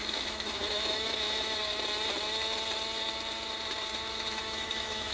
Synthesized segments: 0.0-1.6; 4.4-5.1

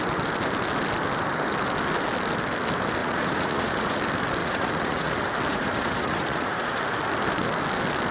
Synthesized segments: 3.0-4.0; 4.4-5.1; 5.5-6.7

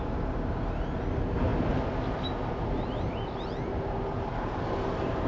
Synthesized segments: none